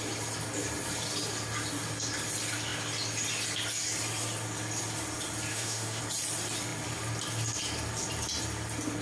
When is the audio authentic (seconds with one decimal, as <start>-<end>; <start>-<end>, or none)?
0.0-5.5; 6.0-9.0